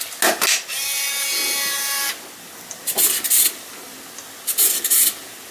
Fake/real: real